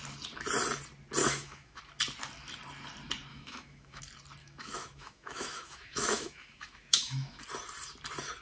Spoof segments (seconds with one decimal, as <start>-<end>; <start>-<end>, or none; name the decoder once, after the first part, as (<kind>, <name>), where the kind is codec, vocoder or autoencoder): 1.2-1.8 (autoencoder, DAC-VAE); 3.3-4.0; 4.4-7.4